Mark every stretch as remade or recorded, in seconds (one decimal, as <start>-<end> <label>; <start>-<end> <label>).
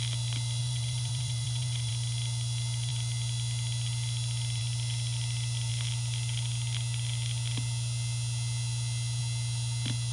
0.0-0.6 recorded; 0.6-1.9 remade; 1.9-10.1 recorded